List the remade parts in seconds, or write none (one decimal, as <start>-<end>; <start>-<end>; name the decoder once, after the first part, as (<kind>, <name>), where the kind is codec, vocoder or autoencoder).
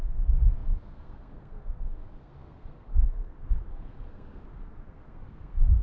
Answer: 0.0-5.8 (codec, SNAC)